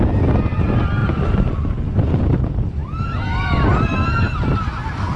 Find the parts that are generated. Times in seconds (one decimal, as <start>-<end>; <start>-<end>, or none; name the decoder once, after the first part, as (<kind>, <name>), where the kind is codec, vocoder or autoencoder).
1.0-2.2 (vocoder, Vocos)